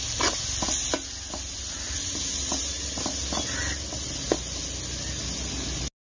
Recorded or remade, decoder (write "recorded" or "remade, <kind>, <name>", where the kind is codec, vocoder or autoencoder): recorded